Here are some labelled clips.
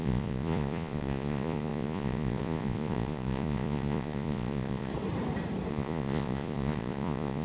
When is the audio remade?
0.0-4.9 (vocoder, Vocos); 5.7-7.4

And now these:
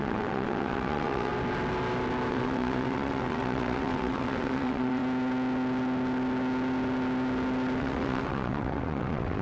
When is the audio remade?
0.0-1.3 (vocoder, WaveNeXt); 2.3-5.0; 7.8-9.4

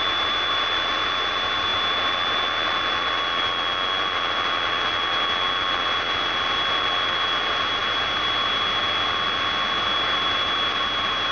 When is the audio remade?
none

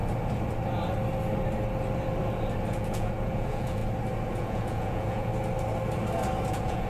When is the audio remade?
2.7-3.8 (vocoder, Vocos); 4.3-5.3; 6.5-6.9